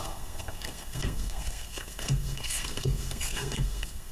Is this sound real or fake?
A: fake